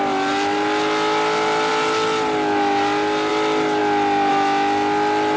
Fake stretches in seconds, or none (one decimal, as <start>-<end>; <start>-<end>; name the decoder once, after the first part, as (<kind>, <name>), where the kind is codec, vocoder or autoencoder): none

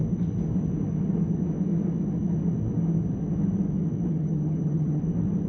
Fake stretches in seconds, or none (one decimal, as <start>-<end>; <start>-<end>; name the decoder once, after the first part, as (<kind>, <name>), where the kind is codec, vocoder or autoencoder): 4.1-5.0 (vocoder, HiFi-GAN)

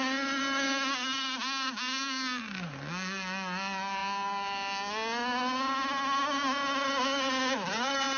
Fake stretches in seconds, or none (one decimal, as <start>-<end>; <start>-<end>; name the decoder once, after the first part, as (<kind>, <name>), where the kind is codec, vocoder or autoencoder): none